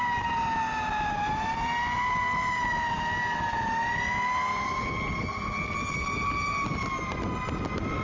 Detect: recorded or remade recorded